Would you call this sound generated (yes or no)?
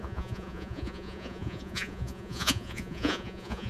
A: yes